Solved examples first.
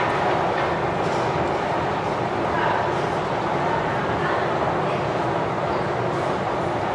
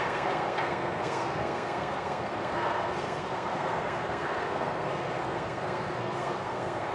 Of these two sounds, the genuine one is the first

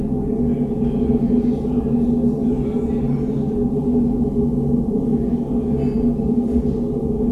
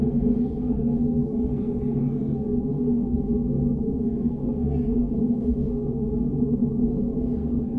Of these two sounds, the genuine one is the first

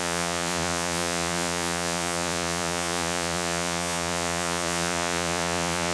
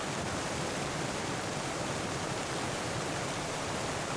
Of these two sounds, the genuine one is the second